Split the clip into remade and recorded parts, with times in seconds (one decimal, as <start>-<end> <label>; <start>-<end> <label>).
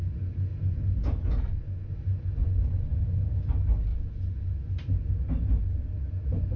0.0-0.5 recorded; 0.5-1.6 remade; 1.6-2.9 recorded; 2.9-3.5 remade; 3.5-6.6 recorded